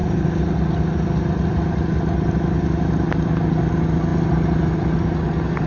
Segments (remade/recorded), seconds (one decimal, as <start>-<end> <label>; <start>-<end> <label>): 0.0-5.7 recorded